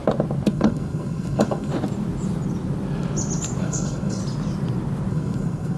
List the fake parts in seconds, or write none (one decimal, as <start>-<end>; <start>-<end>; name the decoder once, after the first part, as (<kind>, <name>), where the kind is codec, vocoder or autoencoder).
0.5-1.7 (codec, SNAC); 3.6-4.2; 5.1-5.8